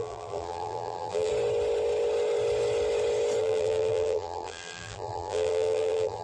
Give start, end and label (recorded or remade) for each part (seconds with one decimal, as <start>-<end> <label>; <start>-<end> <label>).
0.0-1.3 remade; 1.3-3.4 recorded; 3.4-6.2 remade